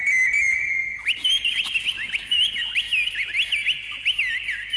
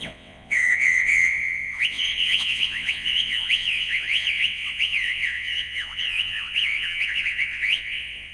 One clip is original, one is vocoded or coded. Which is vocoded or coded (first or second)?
second